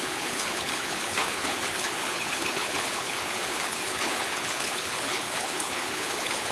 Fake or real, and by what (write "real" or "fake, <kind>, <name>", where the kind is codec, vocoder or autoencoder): fake, codec, HILCodec